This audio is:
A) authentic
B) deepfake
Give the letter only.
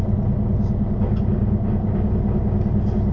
A